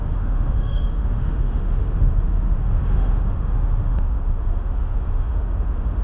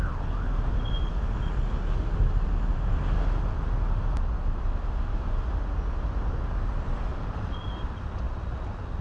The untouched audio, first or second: second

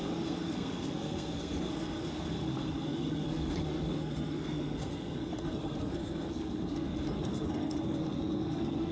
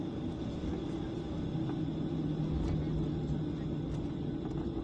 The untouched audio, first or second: second